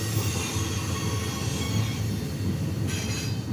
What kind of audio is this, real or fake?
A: real